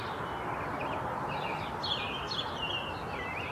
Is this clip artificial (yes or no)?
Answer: no